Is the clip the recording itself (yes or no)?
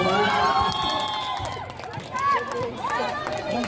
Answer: yes